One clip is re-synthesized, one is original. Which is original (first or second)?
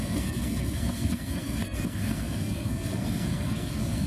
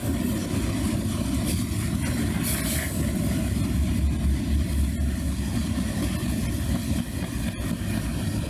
second